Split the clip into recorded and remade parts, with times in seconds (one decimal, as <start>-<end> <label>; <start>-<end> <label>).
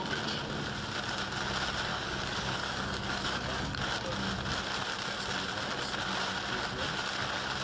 0.0-1.9 recorded; 1.9-3.8 remade; 3.8-7.6 recorded